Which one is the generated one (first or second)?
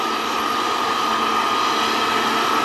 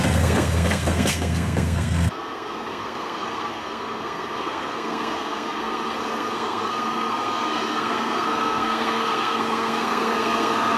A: second